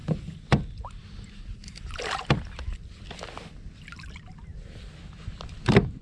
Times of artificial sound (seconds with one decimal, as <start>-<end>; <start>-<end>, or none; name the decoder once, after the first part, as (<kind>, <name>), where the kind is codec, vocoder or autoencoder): none